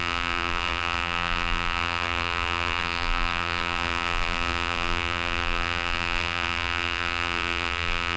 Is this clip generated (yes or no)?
yes